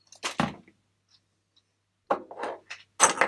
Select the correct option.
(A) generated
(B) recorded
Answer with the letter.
B